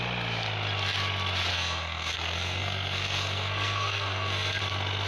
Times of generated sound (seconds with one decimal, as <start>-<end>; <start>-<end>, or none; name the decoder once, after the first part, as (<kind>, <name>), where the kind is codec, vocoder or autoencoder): 1.5-4.6 (codec, SNAC)